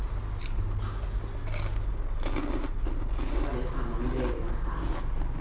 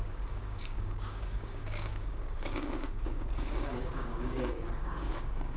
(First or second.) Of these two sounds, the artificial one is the second